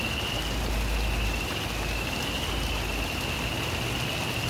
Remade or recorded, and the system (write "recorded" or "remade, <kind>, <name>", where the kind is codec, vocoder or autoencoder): recorded